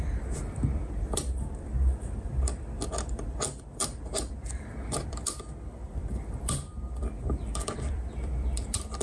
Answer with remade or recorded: remade